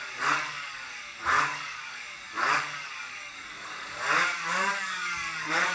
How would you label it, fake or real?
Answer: fake